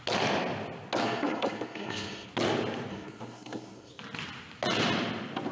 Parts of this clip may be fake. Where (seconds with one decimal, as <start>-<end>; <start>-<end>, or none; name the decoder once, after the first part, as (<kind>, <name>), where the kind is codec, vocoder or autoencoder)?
1.0-2.3 (codec, SNAC); 2.9-3.9